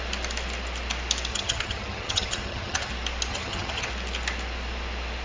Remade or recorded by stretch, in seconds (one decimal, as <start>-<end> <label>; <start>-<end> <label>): 0.0-1.3 recorded; 1.3-2.9 remade; 2.9-3.3 recorded; 3.3-3.9 remade; 3.9-5.2 recorded